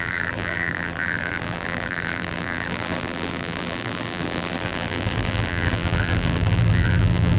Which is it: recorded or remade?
remade